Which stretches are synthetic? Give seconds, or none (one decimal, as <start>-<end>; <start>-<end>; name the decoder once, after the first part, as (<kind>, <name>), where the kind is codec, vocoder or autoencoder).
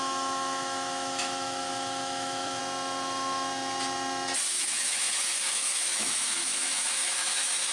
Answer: 0.0-2.6 (autoencoder, DAC-VAE); 4.5-7.7